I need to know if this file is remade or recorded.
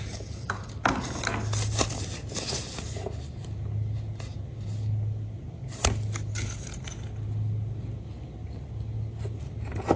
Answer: recorded